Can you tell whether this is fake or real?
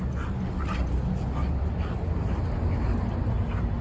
real